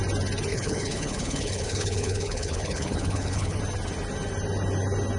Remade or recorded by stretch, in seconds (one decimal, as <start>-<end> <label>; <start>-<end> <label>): 0.0-0.5 recorded; 0.5-3.6 remade; 3.6-5.2 recorded